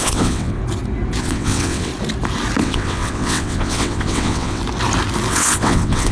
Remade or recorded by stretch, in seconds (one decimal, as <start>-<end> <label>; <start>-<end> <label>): 0.0-0.6 remade; 0.6-1.2 recorded; 1.2-1.9 remade; 1.9-2.6 recorded; 2.6-4.6 remade; 4.6-5.3 recorded; 5.3-6.1 remade